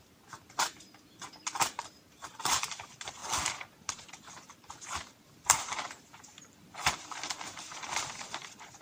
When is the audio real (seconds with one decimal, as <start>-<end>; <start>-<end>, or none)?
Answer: 3.2-3.9